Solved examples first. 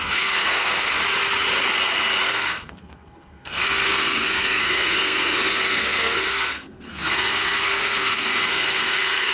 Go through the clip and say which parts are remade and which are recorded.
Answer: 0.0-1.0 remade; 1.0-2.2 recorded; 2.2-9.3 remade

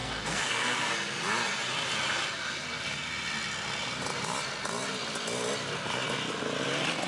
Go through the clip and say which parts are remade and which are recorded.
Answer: 0.0-0.9 remade; 0.9-7.1 recorded

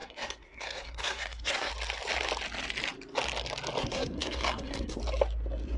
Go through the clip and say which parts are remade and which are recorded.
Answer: 0.0-1.7 remade; 1.7-3.8 recorded; 3.8-5.0 remade; 5.0-5.8 recorded

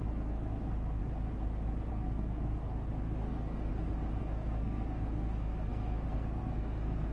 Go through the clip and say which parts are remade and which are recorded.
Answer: 0.0-1.0 remade; 1.0-1.9 recorded; 1.9-3.7 remade; 3.7-4.2 recorded; 4.2-7.1 remade

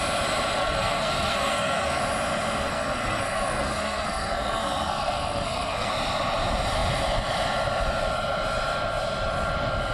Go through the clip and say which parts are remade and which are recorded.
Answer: 0.0-0.6 recorded; 0.6-2.0 remade; 2.0-2.7 recorded; 2.7-5.9 remade; 5.9-9.9 recorded

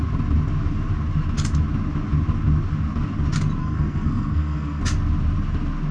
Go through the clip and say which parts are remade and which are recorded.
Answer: 0.0-3.6 recorded; 3.6-4.8 remade; 4.8-5.9 recorded

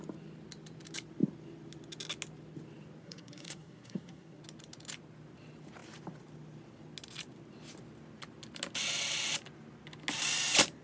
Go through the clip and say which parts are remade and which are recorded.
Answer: 0.0-3.0 recorded; 3.0-4.4 remade; 4.4-10.8 recorded

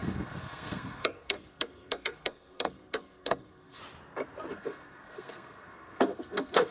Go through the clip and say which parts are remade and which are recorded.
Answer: 0.0-3.8 remade; 3.8-4.5 recorded; 4.5-6.7 remade